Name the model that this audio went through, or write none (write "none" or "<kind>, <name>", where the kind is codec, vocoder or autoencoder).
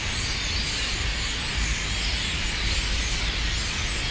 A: none